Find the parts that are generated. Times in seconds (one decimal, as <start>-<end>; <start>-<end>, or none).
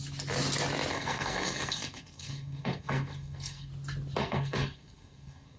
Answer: 0.9-3.7; 4.2-5.6